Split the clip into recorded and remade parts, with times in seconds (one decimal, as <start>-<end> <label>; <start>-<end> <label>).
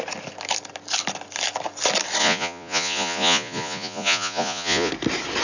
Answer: 0.0-2.2 recorded; 2.2-4.9 remade; 4.9-5.4 recorded